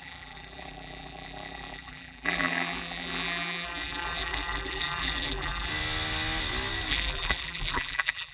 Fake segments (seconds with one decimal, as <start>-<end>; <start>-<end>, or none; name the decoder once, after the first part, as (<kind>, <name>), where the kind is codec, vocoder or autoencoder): 0.0-5.7 (vocoder, BigVGAN v2); 6.9-8.3